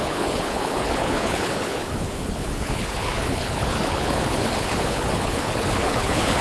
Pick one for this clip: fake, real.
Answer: fake